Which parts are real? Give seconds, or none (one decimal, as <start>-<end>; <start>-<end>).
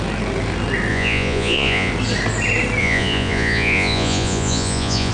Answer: 0.0-0.9; 1.9-2.8